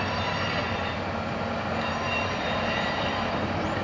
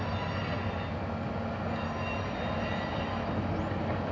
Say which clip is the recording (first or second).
second